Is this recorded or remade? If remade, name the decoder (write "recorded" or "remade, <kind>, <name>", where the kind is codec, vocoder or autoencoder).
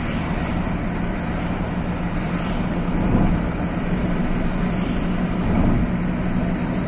recorded